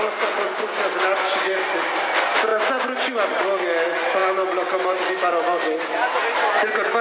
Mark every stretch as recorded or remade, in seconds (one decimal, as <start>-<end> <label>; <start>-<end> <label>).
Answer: 0.0-7.0 recorded

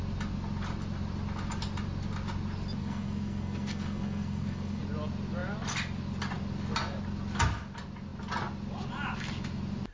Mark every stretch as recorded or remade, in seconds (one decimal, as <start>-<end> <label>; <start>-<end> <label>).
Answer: 0.0-2.8 recorded; 2.8-4.8 remade; 4.8-9.9 recorded

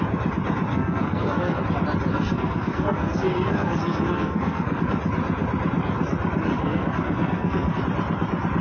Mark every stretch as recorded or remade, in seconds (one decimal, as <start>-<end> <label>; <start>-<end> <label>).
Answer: 0.0-0.7 recorded; 0.7-1.6 remade; 1.6-2.1 recorded; 2.1-4.8 remade; 4.8-6.5 recorded; 6.5-7.8 remade; 7.8-8.6 recorded

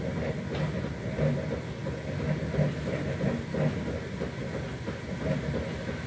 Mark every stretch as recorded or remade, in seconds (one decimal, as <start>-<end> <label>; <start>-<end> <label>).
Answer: 0.0-6.1 recorded